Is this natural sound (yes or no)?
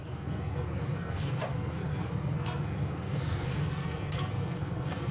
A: no